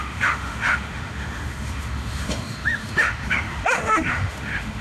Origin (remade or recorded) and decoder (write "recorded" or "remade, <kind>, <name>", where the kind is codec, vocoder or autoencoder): remade, autoencoder, DAC-VAE